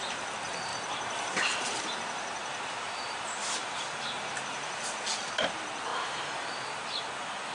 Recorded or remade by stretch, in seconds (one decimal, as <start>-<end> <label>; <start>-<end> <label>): 0.0-0.7 recorded; 0.7-1.8 remade; 1.8-2.4 recorded; 2.4-4.8 remade; 4.8-5.9 recorded; 5.9-7.0 remade; 7.0-7.5 recorded